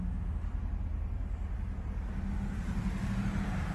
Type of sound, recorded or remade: recorded